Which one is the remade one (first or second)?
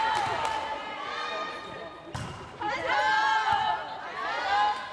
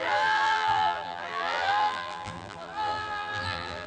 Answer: second